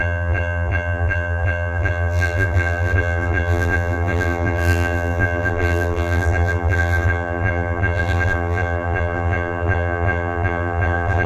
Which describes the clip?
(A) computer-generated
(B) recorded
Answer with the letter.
A